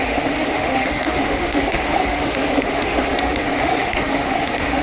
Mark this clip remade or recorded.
remade